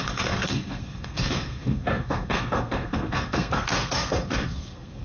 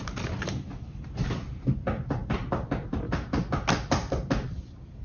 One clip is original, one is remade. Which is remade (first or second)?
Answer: first